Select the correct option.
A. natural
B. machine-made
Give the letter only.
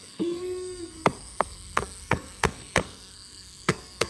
B